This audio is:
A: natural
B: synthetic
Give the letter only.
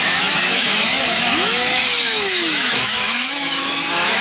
B